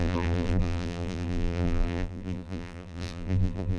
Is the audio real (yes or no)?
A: no